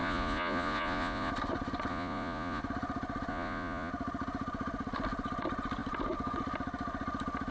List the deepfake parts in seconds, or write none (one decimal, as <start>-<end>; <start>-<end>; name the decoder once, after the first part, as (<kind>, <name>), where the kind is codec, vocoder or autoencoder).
0.0-1.3 (vocoder, Vocos); 1.9-2.6; 3.3-3.9